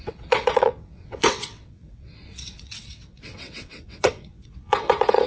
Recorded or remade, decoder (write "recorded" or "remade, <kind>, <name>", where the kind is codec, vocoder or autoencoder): remade, vocoder, WaveNeXt